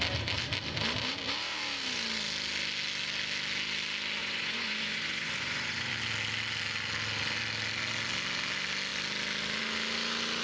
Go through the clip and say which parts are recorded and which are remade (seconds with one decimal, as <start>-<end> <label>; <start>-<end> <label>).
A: 0.0-4.2 recorded; 4.2-5.9 remade; 5.9-10.4 recorded